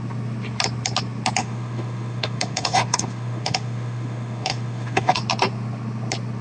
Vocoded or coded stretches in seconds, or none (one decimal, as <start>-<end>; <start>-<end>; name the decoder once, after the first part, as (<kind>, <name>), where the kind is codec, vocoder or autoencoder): 1.4-5.2 (autoencoder, DAC-VAE)